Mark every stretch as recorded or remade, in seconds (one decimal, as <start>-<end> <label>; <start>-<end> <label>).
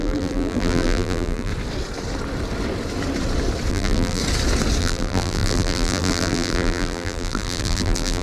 0.0-1.5 remade; 1.5-3.7 recorded; 3.7-4.2 remade; 4.2-4.8 recorded; 4.8-8.2 remade